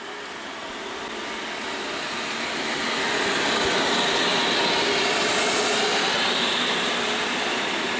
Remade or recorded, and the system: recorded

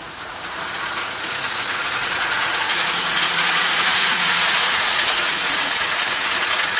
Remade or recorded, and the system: remade, vocoder, Vocos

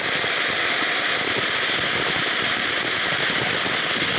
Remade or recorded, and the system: recorded